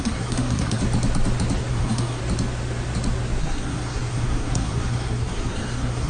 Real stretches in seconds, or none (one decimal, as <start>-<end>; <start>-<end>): 0.8-1.7; 2.2-3.4